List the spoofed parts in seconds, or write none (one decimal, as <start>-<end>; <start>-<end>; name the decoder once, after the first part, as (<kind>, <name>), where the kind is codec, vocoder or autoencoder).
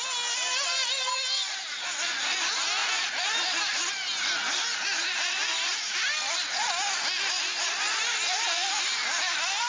none